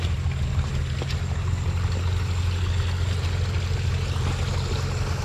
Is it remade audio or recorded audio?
recorded